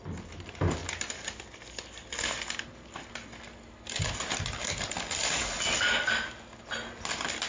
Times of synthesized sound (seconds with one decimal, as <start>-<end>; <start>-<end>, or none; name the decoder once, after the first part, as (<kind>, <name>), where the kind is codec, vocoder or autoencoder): none